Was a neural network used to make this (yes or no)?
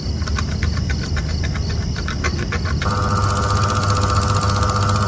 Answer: no